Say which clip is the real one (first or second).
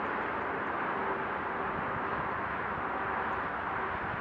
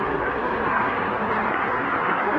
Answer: first